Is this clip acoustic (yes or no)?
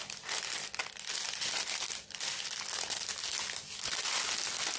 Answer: yes